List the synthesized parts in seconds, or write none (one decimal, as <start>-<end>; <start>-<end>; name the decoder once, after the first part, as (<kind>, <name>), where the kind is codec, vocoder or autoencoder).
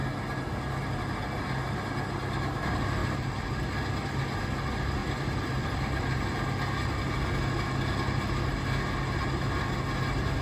3.0-3.6 (vocoder, BigVGAN v2); 5.0-6.0